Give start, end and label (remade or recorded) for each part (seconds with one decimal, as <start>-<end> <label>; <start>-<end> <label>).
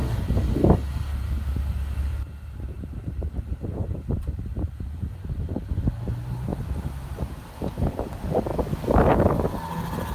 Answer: 0.0-2.1 recorded; 2.1-5.7 remade; 5.7-6.5 recorded; 6.5-8.0 remade; 8.0-10.1 recorded